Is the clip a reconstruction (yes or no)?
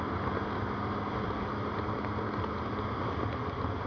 no